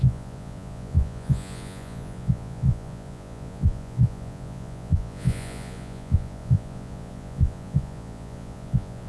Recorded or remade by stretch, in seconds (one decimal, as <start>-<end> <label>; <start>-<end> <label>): 0.0-9.1 remade